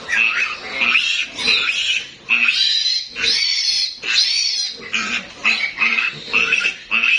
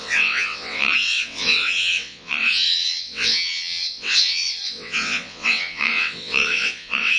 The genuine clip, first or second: first